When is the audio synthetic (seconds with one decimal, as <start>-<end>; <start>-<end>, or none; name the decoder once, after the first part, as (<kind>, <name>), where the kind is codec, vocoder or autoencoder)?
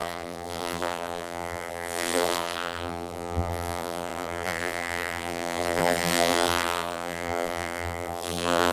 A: 0.0-8.7 (vocoder, BigVGAN v2)